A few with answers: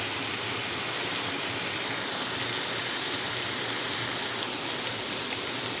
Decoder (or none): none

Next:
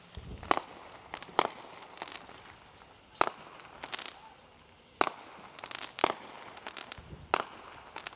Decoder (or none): none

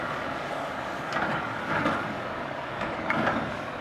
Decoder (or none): codec, DAC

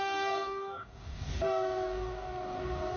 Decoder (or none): codec, DAC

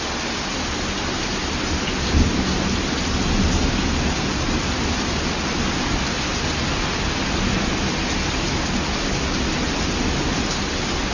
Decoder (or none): none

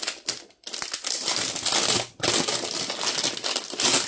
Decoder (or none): none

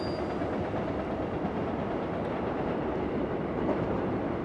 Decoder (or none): none